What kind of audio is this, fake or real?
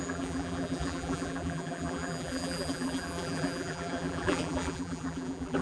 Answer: fake